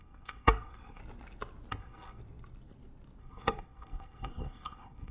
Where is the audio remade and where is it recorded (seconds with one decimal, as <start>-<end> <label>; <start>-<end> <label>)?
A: 0.0-1.0 remade; 1.0-1.7 recorded; 1.7-2.2 remade; 2.2-3.2 recorded; 3.2-5.1 remade